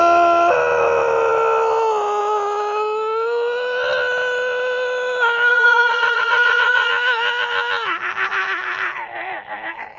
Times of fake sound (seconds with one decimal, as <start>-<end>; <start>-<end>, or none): 5.5-6.9